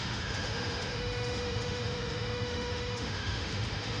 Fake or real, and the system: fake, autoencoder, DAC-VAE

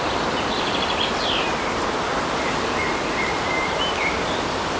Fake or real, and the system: real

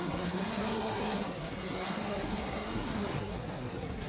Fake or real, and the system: fake, codec, SNAC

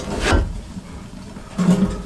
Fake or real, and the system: real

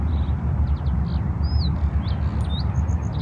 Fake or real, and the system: real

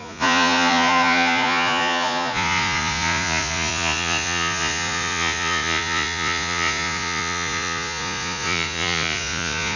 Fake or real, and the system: fake, vocoder, Vocos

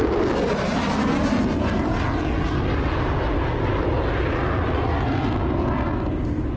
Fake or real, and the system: real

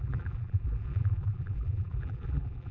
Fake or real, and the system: fake, vocoder, BigVGAN v2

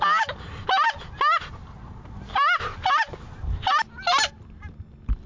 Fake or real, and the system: real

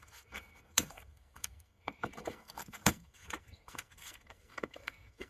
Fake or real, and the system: fake, codec, SNAC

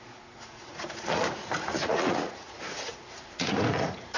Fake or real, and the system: fake, vocoder, Vocos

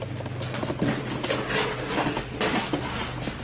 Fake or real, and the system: real